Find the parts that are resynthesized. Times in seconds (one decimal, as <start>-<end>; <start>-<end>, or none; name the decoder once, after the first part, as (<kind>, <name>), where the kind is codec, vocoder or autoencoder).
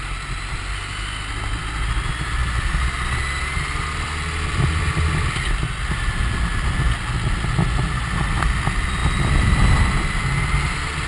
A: none